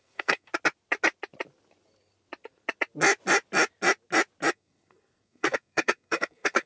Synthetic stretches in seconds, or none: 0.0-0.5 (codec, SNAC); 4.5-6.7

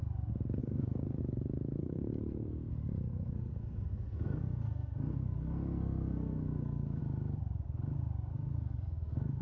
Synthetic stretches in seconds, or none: 0.6-1.2 (codec, SNAC); 1.8-2.7; 3.1-7.0; 8.3-9.4

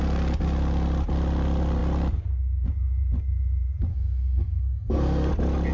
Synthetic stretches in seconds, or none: 3.9-5.3 (codec, SNAC)

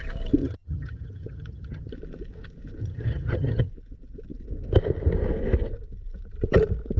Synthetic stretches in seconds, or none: 0.4-1.9 (vocoder, HiFi-GAN); 2.8-3.7

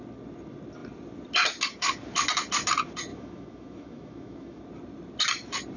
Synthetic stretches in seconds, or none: 3.1-4.6 (autoencoder, DAC-VAE)